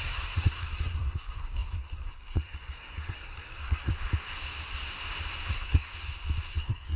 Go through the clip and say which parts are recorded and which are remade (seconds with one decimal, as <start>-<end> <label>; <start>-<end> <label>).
0.0-3.9 remade; 3.9-5.5 recorded; 5.5-5.9 remade; 5.9-6.5 recorded; 6.5-7.0 remade